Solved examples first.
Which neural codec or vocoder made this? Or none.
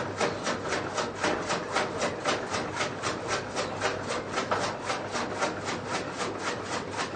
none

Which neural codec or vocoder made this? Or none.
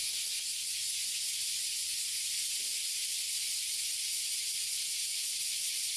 none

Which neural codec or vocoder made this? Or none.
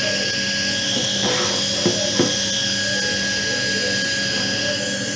none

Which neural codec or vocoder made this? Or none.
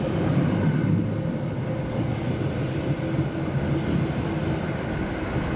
none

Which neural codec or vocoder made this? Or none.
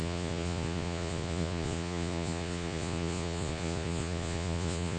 vocoder, Vocos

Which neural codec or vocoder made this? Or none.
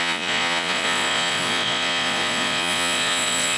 vocoder, Vocos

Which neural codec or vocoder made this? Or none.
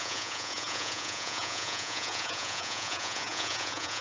vocoder, Vocos